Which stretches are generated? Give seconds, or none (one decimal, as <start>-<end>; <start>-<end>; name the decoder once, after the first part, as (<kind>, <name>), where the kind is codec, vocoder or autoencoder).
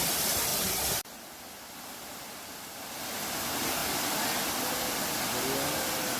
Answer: 3.8-4.7 (vocoder, BigVGAN v2)